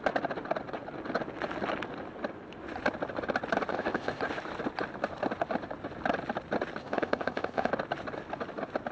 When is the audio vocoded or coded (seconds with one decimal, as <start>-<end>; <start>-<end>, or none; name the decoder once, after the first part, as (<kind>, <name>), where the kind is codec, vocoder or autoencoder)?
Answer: 3.7-4.2 (codec, ZipCodec); 6.8-7.7